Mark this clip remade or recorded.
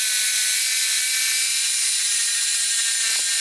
recorded